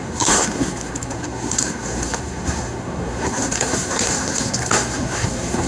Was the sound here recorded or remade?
remade